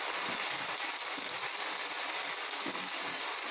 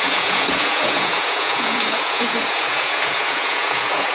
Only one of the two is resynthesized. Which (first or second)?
second